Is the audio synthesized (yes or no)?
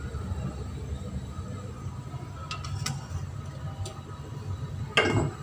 no